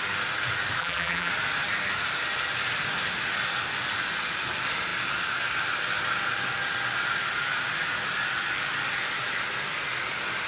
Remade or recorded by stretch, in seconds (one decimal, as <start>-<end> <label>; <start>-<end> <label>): 0.0-0.8 recorded; 0.8-1.3 remade; 1.3-10.5 recorded